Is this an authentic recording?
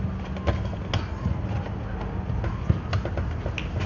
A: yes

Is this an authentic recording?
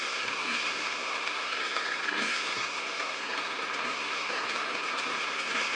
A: no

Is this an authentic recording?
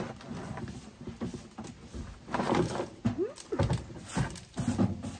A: yes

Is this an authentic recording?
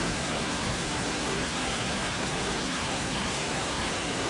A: no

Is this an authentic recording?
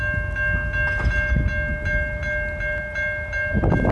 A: yes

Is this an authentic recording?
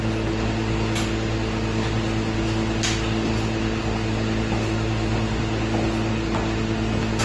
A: yes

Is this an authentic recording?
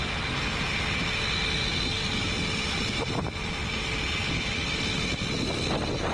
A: yes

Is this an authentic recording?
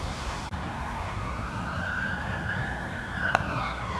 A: no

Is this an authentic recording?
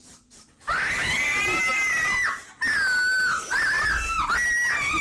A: yes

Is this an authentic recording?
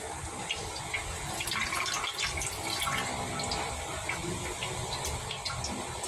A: yes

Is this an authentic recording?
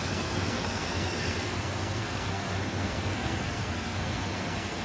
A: no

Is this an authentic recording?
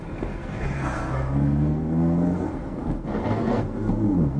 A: no